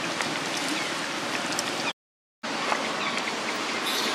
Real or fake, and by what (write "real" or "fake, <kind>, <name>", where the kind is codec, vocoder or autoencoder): real